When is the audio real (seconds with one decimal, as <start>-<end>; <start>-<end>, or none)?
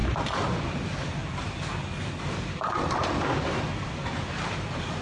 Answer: 1.2-2.2